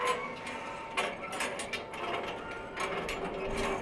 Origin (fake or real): real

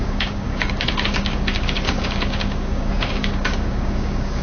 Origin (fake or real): fake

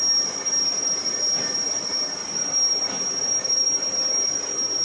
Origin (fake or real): real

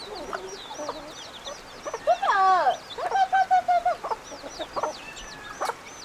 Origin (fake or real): real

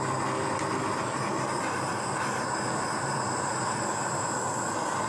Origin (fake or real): real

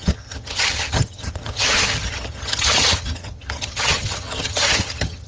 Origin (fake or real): fake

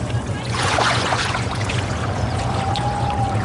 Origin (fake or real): fake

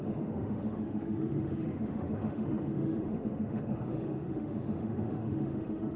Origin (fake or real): fake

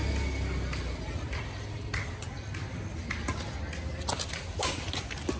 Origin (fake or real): real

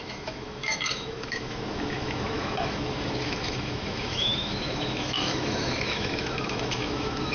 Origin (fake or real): fake